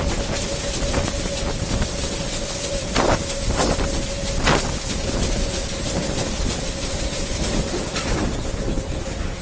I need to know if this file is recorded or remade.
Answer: recorded